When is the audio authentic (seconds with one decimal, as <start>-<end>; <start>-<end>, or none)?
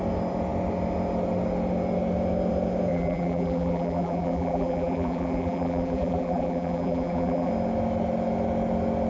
0.0-2.9; 7.5-9.1